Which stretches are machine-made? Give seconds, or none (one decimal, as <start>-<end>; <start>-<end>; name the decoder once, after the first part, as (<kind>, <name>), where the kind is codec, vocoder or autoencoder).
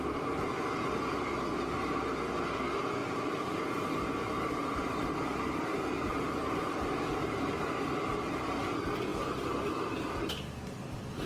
3.0-7.9 (vocoder, BigVGAN v2)